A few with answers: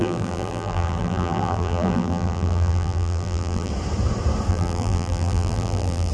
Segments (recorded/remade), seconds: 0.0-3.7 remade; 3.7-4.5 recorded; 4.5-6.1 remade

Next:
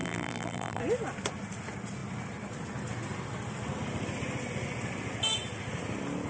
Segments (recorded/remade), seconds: 0.0-0.8 remade; 0.8-6.3 recorded

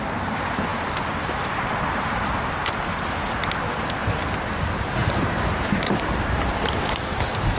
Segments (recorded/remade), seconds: 0.0-0.7 recorded; 0.7-1.3 remade; 1.3-5.0 recorded; 5.0-7.6 remade

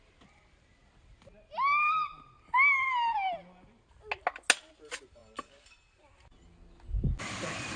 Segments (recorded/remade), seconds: 0.0-7.8 recorded

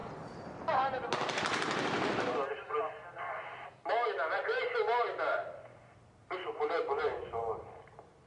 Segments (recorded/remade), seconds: 0.0-5.4 recorded; 5.4-7.7 remade; 7.7-8.3 recorded

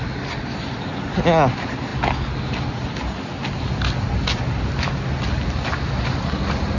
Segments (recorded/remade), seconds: 0.0-6.8 recorded

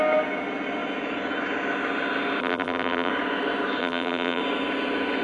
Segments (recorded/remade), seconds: 0.0-2.4 recorded; 2.4-3.1 remade; 3.1-3.8 recorded; 3.8-4.4 remade; 4.4-5.2 recorded

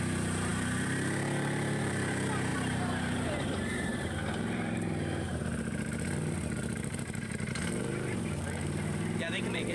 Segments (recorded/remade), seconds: 0.0-9.7 remade